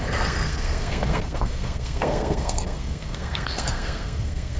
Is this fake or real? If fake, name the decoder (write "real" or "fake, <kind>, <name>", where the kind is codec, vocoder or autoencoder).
fake, codec, SNAC